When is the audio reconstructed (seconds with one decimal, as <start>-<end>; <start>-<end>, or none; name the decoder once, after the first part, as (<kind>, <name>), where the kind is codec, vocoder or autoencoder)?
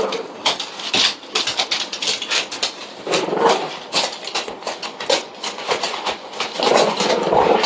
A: 4.8-7.1 (vocoder, Vocos)